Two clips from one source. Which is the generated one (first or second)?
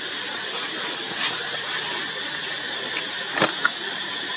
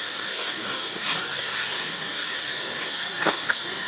second